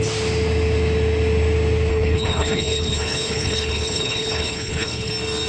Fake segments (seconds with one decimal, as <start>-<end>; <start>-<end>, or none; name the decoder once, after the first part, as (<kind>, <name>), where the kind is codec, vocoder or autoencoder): 1.9-5.1 (codec, HILCodec)

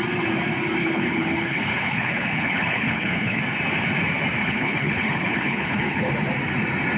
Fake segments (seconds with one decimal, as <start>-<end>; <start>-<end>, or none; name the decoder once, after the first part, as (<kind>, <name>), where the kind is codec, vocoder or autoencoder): 0.8-3.4 (codec, HILCodec); 4.4-6.1

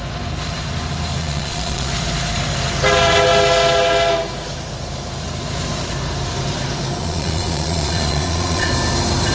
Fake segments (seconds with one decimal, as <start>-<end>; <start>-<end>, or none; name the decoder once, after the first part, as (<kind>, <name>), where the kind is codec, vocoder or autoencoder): 1.2-1.9 (vocoder, Vocos); 7.0-8.7

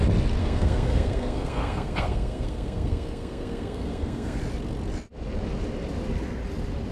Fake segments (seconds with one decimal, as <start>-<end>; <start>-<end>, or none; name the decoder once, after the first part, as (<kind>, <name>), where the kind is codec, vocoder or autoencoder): 0.4-4.4 (codec, SNAC)

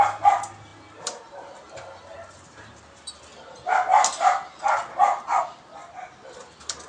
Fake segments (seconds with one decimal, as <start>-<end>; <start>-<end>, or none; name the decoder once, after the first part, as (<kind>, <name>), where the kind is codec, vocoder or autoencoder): none

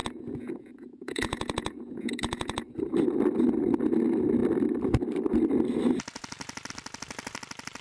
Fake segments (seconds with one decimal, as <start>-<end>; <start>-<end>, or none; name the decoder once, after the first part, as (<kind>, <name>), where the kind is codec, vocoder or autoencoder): 0.0-2.8 (vocoder, Vocos)

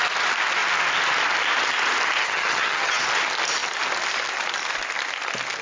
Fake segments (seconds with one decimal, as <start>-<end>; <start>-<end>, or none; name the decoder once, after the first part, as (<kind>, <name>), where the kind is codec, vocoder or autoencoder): 2.2-3.0 (vocoder, HiFi-GAN)